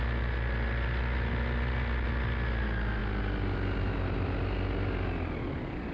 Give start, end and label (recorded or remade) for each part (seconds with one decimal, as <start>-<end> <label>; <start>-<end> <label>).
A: 0.0-5.9 recorded